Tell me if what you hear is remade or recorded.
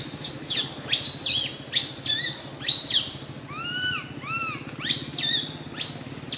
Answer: recorded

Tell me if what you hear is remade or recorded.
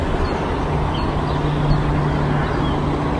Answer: recorded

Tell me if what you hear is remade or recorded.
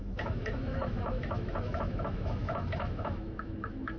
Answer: remade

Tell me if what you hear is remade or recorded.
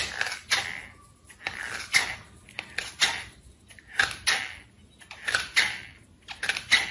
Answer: recorded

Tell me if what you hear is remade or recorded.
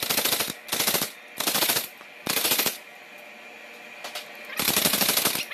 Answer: recorded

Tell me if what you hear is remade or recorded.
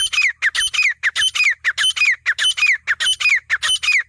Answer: recorded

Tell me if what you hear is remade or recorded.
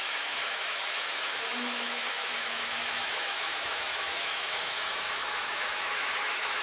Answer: remade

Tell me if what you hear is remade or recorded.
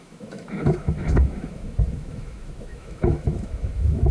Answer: remade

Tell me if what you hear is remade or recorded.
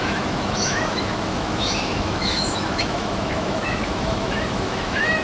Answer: remade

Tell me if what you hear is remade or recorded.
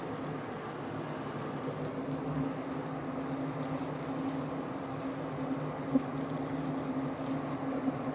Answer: recorded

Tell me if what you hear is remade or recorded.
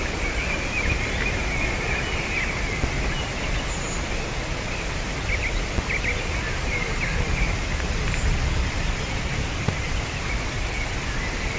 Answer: recorded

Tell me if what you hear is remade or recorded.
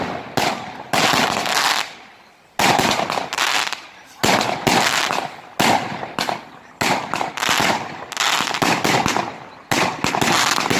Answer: recorded